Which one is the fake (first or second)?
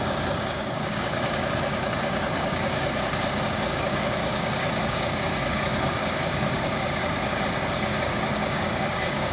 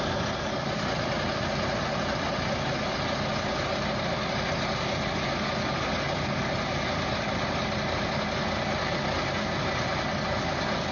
first